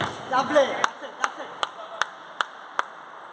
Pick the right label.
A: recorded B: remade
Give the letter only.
A